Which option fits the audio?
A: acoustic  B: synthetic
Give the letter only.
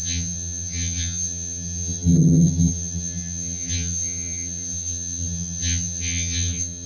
B